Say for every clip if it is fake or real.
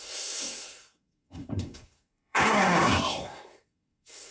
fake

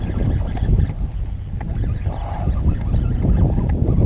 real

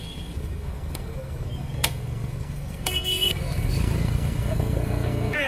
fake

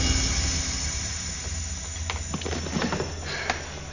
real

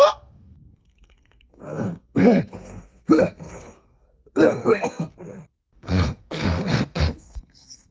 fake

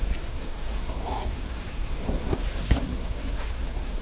fake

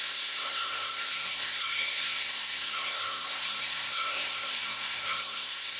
fake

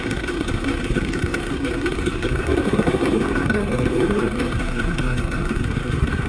fake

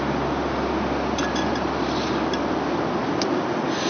real